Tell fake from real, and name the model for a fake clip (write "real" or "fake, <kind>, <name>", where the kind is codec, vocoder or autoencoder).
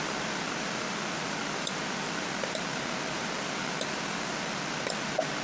fake, vocoder, BigVGAN v2